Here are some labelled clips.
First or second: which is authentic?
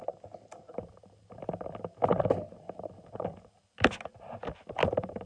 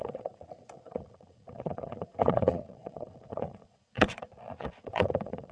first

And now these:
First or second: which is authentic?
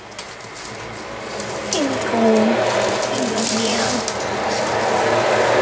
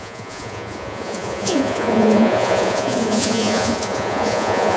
first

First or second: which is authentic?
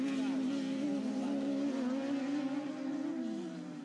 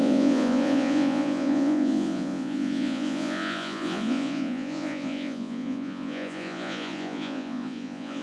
first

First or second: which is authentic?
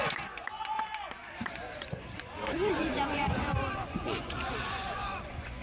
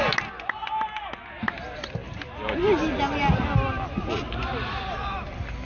second